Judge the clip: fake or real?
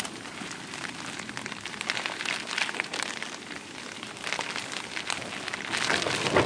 real